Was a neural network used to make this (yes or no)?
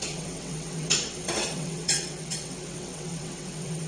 yes